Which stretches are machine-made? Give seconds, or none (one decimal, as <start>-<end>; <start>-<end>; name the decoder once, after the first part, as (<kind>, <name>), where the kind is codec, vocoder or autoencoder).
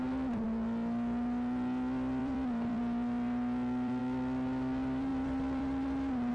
2.2-4.0 (vocoder, BigVGAN v2); 5.1-6.3